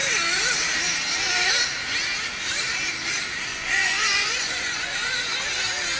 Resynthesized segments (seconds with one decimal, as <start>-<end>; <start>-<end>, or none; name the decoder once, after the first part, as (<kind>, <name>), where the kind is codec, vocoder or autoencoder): 3.5-5.1 (vocoder, Vocos)